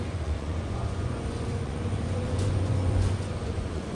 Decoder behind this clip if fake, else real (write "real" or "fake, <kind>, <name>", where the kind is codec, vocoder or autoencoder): fake, vocoder, Vocos